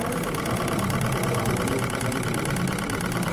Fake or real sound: real